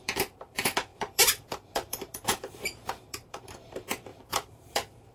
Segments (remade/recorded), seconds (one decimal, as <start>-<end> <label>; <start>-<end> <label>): 0.0-5.1 remade